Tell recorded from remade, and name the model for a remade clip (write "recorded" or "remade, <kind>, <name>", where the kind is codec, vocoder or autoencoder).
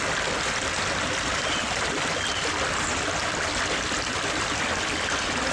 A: recorded